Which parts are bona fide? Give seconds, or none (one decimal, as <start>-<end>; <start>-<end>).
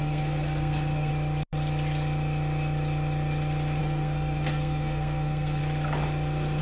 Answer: 1.1-3.8; 5.6-6.6